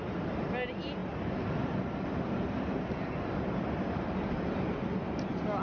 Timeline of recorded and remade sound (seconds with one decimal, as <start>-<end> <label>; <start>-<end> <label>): 0.0-5.6 recorded